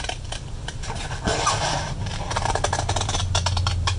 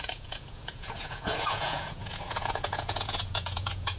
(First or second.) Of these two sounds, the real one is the first